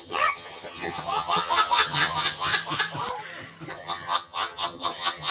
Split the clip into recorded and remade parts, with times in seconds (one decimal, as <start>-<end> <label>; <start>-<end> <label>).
0.0-2.5 remade; 2.5-3.7 recorded; 3.7-5.3 remade

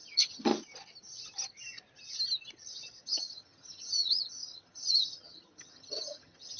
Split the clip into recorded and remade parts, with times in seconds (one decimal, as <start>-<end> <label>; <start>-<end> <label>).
0.0-0.5 remade; 0.5-3.0 recorded; 3.0-6.6 remade

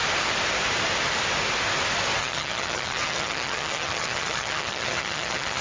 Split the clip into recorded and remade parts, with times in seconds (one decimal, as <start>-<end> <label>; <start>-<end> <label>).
0.0-2.2 recorded; 2.2-5.6 remade

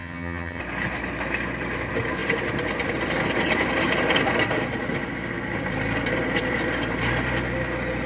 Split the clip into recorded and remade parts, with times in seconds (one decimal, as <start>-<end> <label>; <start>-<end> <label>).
0.0-0.6 remade; 0.6-8.1 recorded

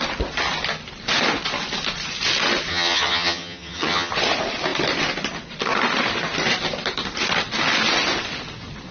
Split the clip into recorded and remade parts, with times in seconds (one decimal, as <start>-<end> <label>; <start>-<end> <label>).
0.0-2.7 recorded; 2.7-4.1 remade; 4.1-8.9 recorded

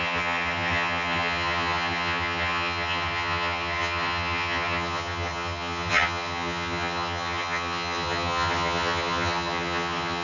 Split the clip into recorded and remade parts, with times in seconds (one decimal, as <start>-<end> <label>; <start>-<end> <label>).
0.0-10.2 remade